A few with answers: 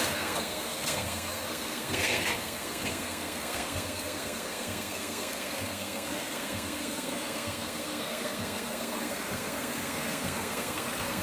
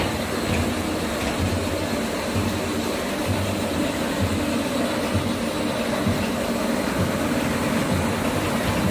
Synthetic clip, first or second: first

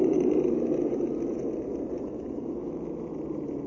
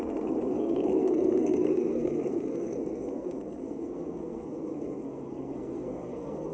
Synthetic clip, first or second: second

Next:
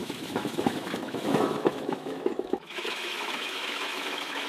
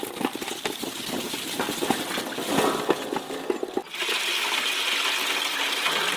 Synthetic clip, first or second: first